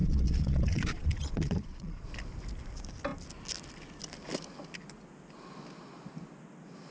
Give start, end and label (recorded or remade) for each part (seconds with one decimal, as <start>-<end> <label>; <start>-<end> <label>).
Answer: 0.0-2.1 remade; 2.1-6.9 recorded